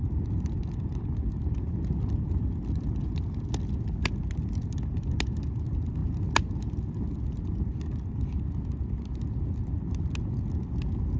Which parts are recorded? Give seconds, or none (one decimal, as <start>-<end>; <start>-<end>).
0.0-11.2